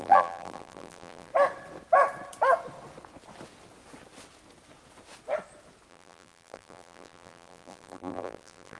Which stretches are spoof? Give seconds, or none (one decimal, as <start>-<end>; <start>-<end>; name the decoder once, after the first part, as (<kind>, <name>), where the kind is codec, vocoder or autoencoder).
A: 0.0-1.3 (vocoder, BigVGAN v2); 5.9-8.8